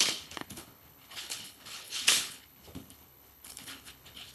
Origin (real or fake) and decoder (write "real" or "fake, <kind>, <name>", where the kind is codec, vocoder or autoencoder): fake, codec, HILCodec